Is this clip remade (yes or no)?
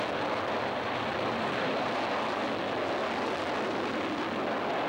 no